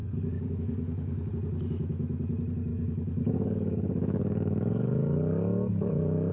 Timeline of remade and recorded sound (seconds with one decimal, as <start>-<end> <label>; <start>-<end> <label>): 0.0-1.3 remade; 1.3-2.7 recorded; 2.7-6.3 remade